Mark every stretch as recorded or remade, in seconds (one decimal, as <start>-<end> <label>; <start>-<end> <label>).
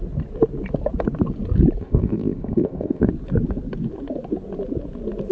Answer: 0.0-1.8 recorded; 1.8-3.1 remade; 3.1-5.3 recorded